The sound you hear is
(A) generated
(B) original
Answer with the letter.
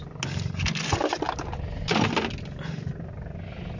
B